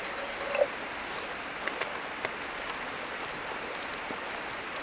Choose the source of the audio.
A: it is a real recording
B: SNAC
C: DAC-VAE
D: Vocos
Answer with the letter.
A